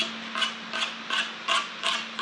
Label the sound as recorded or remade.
recorded